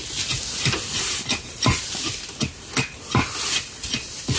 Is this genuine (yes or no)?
yes